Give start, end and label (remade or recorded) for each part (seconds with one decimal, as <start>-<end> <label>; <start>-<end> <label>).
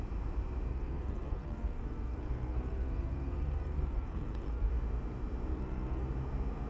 0.0-0.7 recorded; 0.7-4.7 remade; 4.7-5.5 recorded; 5.5-6.0 remade; 6.0-6.7 recorded